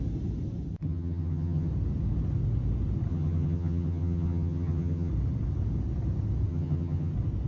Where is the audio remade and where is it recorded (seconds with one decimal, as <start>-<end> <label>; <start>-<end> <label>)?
0.0-0.8 recorded; 0.8-1.7 remade; 1.7-3.1 recorded; 3.1-5.1 remade; 5.1-6.5 recorded; 6.5-7.1 remade; 7.1-7.5 recorded